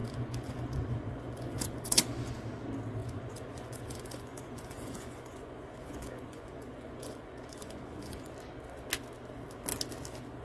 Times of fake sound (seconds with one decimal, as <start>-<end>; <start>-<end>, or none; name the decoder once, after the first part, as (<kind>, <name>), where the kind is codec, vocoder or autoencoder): 0.0-2.4 (vocoder, Vocos); 3.0-8.3